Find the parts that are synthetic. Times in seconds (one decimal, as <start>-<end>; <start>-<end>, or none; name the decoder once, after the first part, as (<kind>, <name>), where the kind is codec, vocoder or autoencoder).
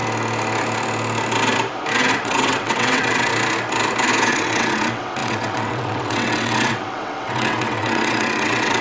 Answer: 2.1-3.3 (vocoder, WaveNeXt); 4.3-8.8